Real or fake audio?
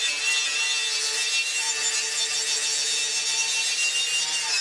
real